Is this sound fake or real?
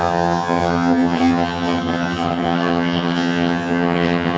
fake